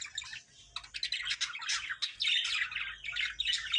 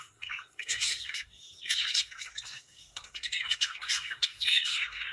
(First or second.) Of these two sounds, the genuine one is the first